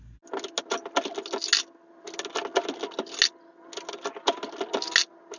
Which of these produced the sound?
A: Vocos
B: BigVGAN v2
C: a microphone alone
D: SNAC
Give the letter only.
C